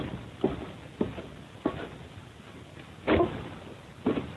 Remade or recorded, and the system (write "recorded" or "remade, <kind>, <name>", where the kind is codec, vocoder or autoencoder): recorded